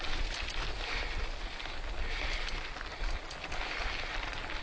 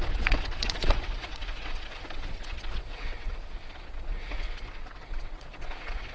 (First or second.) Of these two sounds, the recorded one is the first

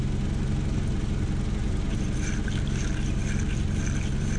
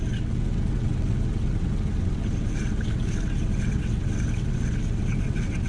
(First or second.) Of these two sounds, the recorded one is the first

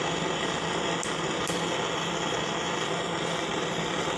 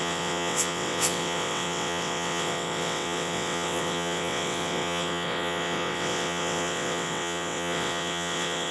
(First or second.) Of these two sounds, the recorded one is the first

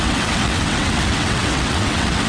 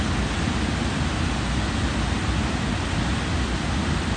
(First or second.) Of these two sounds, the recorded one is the second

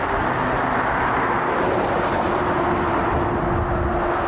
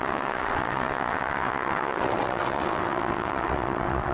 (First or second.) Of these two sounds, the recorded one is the first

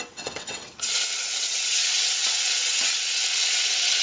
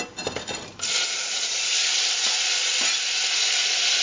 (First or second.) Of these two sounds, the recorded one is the second